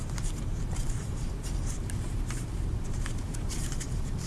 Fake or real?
fake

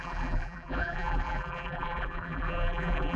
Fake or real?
fake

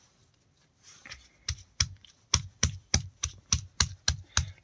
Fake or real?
real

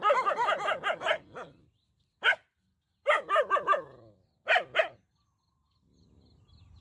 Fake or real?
real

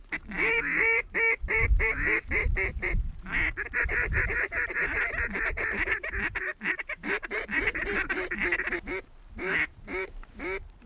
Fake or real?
fake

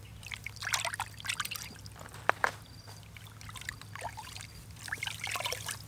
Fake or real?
real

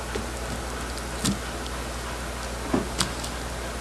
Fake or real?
real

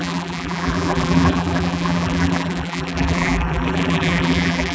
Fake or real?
fake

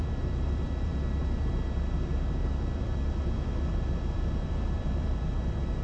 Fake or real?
fake